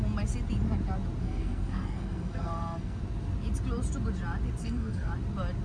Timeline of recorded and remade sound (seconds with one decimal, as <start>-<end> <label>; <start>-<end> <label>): 0.0-1.2 recorded; 1.2-3.0 remade; 3.0-4.6 recorded; 4.6-5.1 remade; 5.1-5.6 recorded